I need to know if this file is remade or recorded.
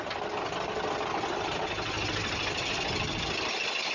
recorded